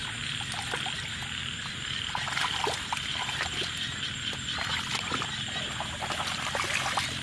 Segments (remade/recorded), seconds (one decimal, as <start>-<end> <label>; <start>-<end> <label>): 0.0-7.2 recorded